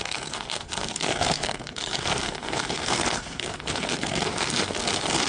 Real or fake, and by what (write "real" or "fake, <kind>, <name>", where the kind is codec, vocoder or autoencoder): fake, codec, SNAC